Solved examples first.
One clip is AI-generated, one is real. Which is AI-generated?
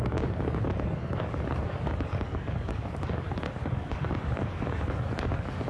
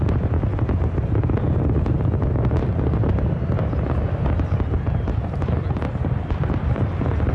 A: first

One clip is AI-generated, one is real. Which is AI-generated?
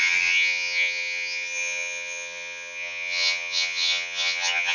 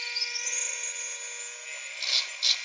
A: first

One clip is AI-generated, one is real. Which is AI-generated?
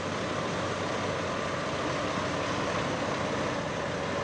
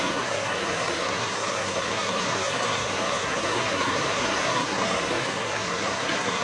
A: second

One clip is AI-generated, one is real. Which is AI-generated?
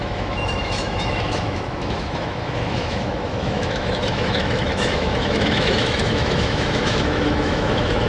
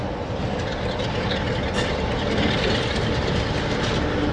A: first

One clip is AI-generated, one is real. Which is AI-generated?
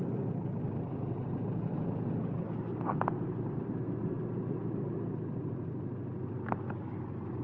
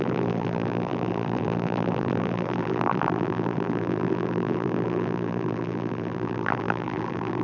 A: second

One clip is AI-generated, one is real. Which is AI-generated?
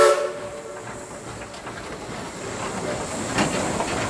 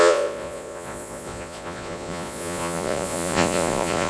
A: second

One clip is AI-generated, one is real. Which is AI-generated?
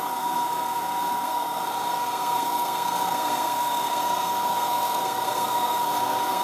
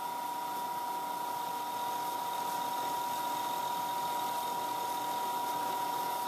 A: first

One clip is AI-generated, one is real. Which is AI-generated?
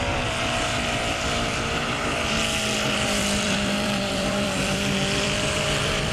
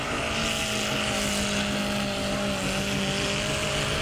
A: first